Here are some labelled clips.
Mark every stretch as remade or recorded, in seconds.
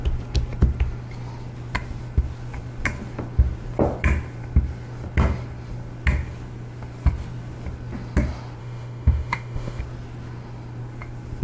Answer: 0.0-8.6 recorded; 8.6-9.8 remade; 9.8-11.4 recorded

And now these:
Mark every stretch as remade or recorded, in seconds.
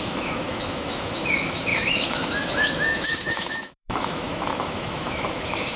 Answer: 0.0-5.8 remade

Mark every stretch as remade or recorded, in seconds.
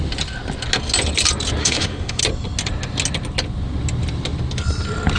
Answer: 0.0-1.6 recorded; 1.6-2.2 remade; 2.2-5.2 recorded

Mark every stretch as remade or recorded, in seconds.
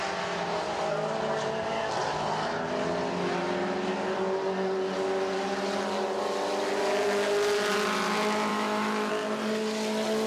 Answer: 0.0-8.5 recorded; 8.5-9.1 remade; 9.1-10.3 recorded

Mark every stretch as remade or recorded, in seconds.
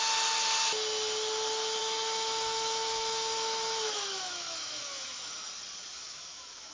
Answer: 0.0-1.8 recorded; 1.8-5.5 remade; 5.5-5.9 recorded; 5.9-6.7 remade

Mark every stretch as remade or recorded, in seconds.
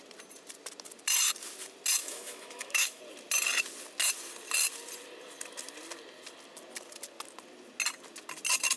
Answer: 0.0-2.0 recorded; 2.0-3.0 remade; 3.0-8.8 recorded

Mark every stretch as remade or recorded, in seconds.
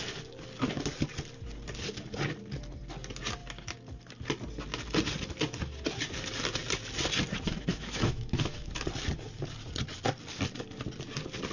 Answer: 0.0-7.7 recorded; 7.7-8.8 remade; 8.8-11.5 recorded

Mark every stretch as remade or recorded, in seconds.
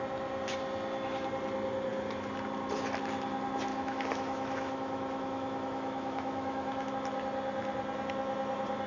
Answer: 0.0-3.7 recorded; 3.7-6.9 remade; 6.9-8.9 recorded